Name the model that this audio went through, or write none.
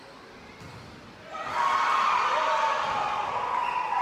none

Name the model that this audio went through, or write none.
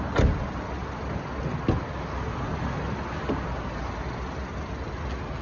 none